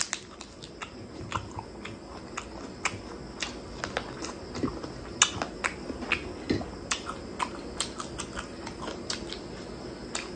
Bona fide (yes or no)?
yes